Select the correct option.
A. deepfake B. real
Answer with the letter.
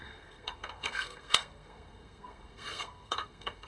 A